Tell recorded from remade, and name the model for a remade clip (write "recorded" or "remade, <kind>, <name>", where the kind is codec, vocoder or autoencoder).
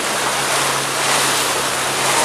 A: recorded